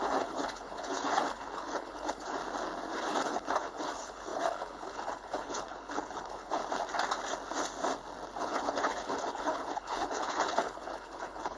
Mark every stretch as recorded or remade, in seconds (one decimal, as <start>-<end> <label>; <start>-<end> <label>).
0.0-2.4 remade; 2.4-2.9 recorded; 2.9-6.6 remade; 6.6-8.4 recorded; 8.4-11.6 remade